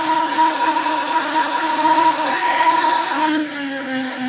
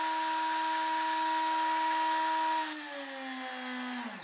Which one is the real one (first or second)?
second